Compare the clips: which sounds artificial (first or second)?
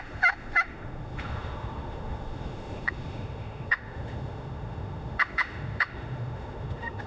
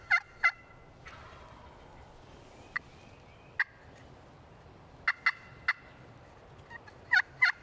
first